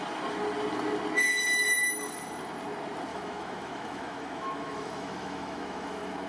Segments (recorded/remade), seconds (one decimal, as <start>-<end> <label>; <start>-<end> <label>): 0.0-3.1 recorded; 3.1-6.3 remade